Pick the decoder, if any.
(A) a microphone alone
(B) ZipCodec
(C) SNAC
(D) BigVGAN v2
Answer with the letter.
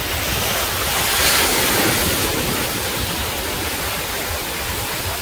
A